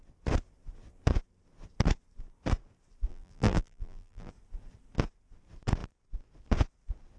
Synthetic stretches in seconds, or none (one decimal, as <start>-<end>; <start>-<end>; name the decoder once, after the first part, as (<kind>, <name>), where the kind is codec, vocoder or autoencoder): 3.1-4.3 (vocoder, BigVGAN v2)